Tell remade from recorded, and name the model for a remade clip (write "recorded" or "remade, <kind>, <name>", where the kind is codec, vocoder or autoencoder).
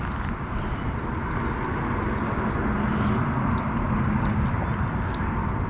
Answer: recorded